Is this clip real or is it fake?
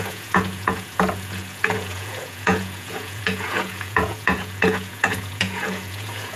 fake